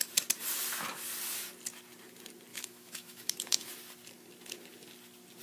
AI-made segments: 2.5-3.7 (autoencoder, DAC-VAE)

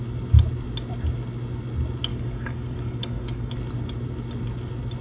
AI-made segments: 2.1-3.5 (codec, DAC)

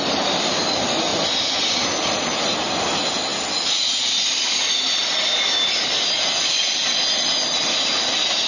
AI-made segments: none

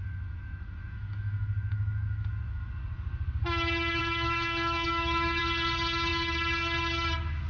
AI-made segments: 0.0-2.7 (autoencoder, DAC-VAE); 4.0-5.4

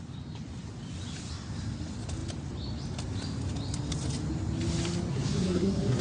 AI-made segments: 5.1-6.0 (codec, SNAC)

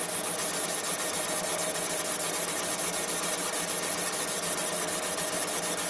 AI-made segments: none